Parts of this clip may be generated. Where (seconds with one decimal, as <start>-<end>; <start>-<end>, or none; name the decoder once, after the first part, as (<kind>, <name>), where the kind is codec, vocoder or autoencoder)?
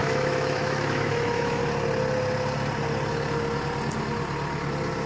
0.0-1.6 (autoencoder, DAC-VAE)